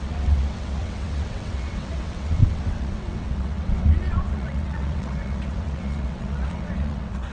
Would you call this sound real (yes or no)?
no